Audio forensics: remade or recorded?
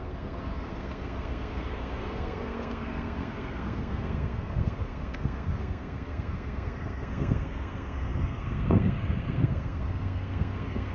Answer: remade